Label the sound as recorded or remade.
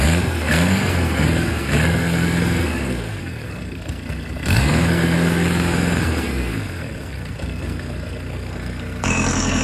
remade